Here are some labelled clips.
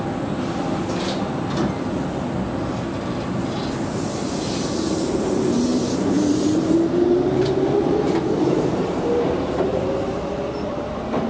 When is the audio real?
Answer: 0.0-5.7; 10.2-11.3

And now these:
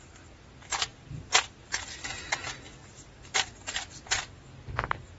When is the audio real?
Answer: 0.0-0.9; 2.3-5.2

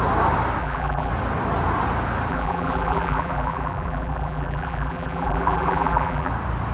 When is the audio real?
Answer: 0.0-0.6; 1.1-2.3; 6.3-6.7

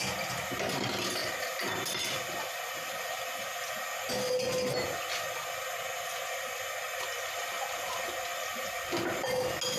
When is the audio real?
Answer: 0.0-1.2; 4.1-8.3; 9.2-9.8

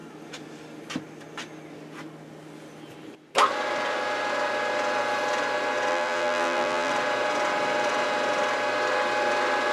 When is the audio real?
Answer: 0.0-5.9; 6.9-9.7

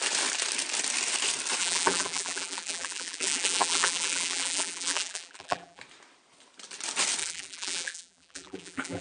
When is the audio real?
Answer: 0.0-1.6; 5.8-7.2

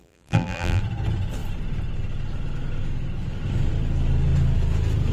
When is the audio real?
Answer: 0.8-5.1

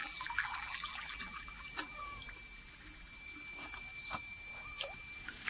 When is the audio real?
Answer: 2.0-5.5